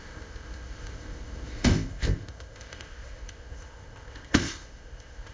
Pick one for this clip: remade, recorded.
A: remade